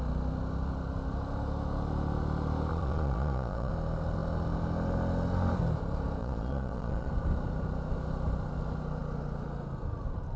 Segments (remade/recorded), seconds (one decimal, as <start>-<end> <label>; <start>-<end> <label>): 0.0-2.7 recorded; 2.7-3.7 remade; 3.7-6.2 recorded; 6.2-7.1 remade; 7.1-10.4 recorded